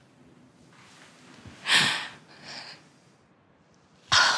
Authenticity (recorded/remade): recorded